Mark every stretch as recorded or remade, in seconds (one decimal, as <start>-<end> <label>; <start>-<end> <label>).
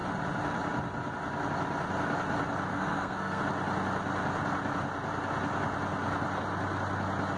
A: 0.0-2.7 recorded; 2.7-3.4 remade; 3.4-7.4 recorded